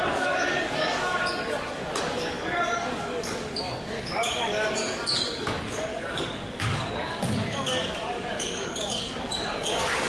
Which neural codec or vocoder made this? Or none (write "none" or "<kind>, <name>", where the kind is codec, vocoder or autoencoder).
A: codec, DAC